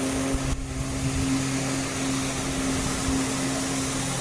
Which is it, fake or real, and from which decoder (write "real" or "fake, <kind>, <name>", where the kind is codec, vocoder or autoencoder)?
real